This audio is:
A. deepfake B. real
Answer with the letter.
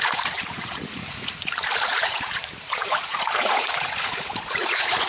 A